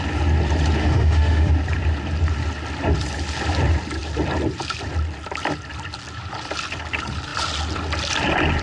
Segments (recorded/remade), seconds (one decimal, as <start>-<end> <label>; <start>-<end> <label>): 0.0-0.8 recorded; 0.8-1.5 remade; 1.5-8.6 recorded